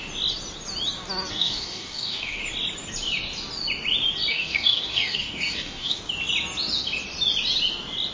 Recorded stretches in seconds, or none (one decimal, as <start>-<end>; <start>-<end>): 0.0-1.3; 2.4-4.3; 6.0-8.1